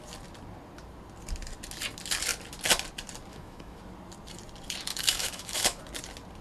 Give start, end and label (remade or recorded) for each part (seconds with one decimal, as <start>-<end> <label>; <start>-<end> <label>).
0.0-3.3 recorded; 3.3-3.8 remade; 3.8-4.9 recorded; 4.9-5.8 remade; 5.8-6.4 recorded